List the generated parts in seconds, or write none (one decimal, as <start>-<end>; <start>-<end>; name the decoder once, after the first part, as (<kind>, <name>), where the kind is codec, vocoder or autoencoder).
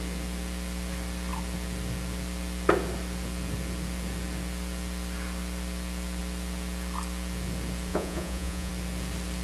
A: 7.9-8.7 (vocoder, Vocos)